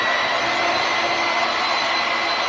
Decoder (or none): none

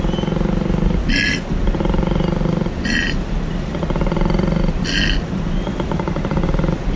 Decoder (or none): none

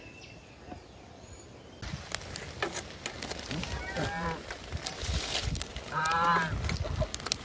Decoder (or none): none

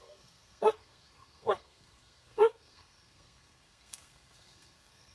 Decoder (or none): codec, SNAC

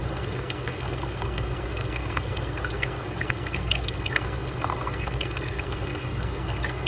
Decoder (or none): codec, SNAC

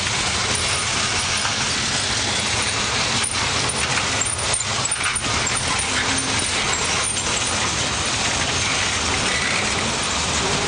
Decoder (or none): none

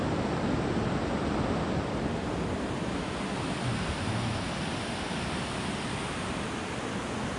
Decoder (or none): none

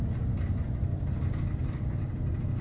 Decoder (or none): none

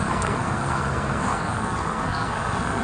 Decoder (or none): codec, SNAC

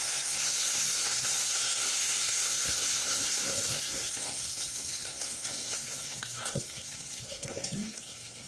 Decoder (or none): codec, SNAC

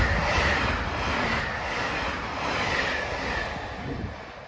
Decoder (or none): none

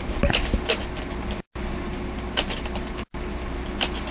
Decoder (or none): none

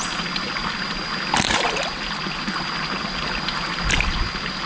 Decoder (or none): none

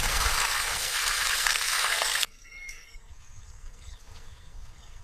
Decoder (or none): codec, SNAC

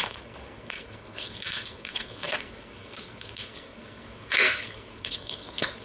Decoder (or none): codec, SNAC